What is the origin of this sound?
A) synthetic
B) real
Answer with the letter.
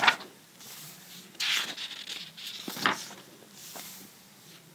B